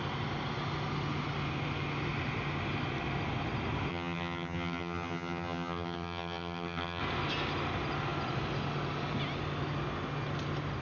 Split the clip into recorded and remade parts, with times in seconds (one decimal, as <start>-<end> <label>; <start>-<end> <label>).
0.0-3.9 recorded; 3.9-7.0 remade; 7.0-10.8 recorded